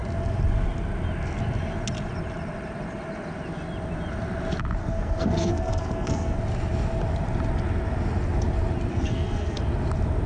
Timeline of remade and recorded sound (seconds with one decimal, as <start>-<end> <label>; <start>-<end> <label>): 0.0-4.8 recorded; 4.8-6.4 remade; 6.4-8.9 recorded; 8.9-9.6 remade; 9.6-10.3 recorded